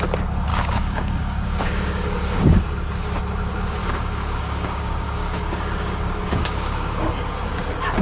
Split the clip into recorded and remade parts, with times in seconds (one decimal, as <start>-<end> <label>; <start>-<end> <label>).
0.0-0.5 recorded; 0.5-2.4 remade; 2.4-3.8 recorded; 3.8-7.6 remade; 7.6-8.0 recorded